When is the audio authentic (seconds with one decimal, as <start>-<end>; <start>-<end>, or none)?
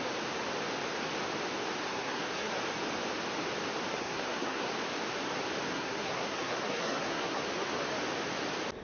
0.0-1.9; 2.5-3.9; 4.7-5.7; 7.4-8.8